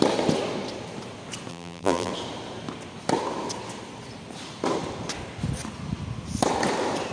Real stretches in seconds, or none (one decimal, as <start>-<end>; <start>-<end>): 0.0-1.5; 2.1-7.1